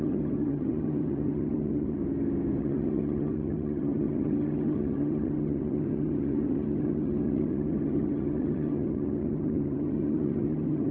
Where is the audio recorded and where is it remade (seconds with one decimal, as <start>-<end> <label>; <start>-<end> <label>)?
0.0-2.0 remade; 2.0-2.6 recorded; 2.6-10.9 remade